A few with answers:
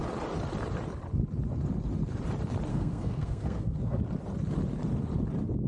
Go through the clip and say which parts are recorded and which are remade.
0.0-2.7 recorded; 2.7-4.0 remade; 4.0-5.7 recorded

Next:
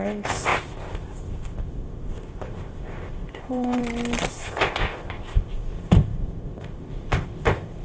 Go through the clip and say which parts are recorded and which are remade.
0.0-3.8 remade; 3.8-4.3 recorded; 4.3-7.8 remade

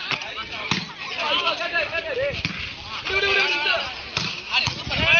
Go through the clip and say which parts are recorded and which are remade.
0.0-5.2 recorded

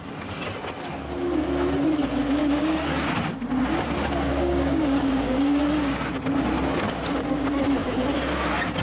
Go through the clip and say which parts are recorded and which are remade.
0.0-2.4 recorded; 2.4-3.1 remade; 3.1-4.3 recorded; 4.3-5.6 remade; 5.6-8.8 recorded

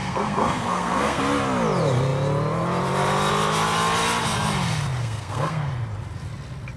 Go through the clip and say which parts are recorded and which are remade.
0.0-1.2 remade; 1.2-5.0 recorded; 5.0-5.7 remade; 5.7-6.8 recorded

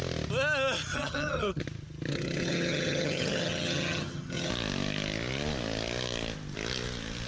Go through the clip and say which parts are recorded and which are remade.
0.0-0.9 recorded; 0.9-1.6 remade; 1.6-2.1 recorded; 2.1-4.5 remade; 4.5-7.3 recorded

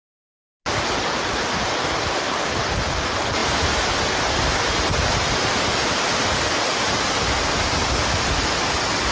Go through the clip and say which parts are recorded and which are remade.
0.0-9.1 recorded

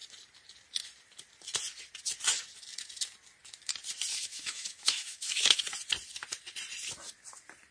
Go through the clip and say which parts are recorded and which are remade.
0.0-4.1 recorded; 4.1-5.6 remade; 5.6-7.7 recorded